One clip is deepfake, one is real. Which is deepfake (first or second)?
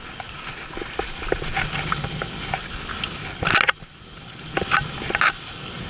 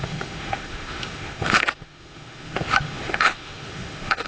second